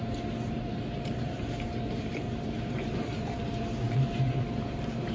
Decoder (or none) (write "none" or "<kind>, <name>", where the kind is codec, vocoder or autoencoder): vocoder, BigVGAN v2